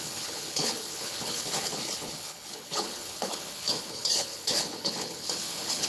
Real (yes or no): no